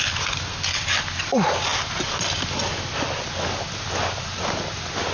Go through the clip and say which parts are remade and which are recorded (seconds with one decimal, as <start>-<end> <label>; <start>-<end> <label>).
0.0-5.1 recorded